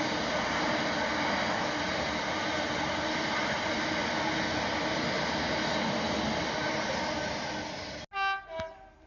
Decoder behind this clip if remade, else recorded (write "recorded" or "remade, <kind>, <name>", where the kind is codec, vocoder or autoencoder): recorded